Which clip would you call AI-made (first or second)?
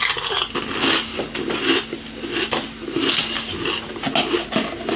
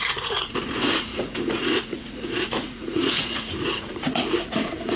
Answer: second